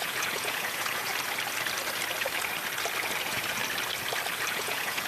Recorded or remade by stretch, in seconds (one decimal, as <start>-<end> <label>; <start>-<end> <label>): 0.0-1.1 remade; 1.1-3.2 recorded; 3.2-3.6 remade; 3.6-4.5 recorded; 4.5-5.1 remade